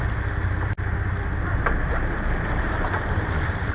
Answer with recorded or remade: recorded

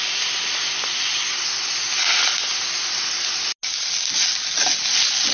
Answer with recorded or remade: recorded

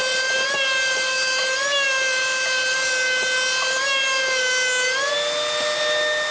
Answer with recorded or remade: recorded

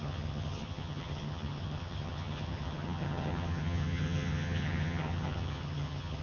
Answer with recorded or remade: remade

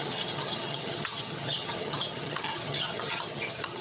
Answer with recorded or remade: remade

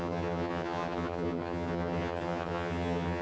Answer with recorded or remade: remade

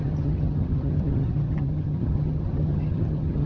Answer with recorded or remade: remade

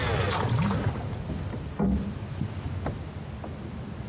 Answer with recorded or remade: recorded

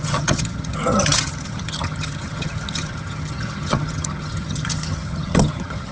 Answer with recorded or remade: remade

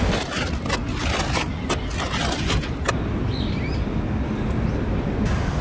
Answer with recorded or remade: recorded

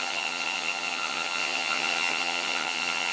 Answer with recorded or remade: remade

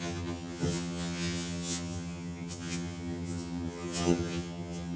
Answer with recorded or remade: remade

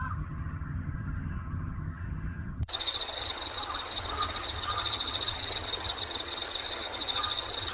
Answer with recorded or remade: remade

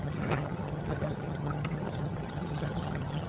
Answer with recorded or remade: remade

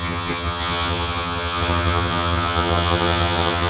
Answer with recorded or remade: remade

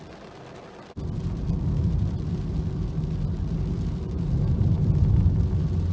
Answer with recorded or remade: recorded